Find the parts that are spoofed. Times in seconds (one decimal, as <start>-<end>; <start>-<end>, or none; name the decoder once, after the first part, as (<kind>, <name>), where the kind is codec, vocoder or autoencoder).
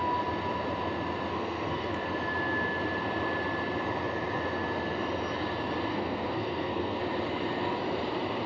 1.3-1.9 (codec, SNAC); 5.9-7.0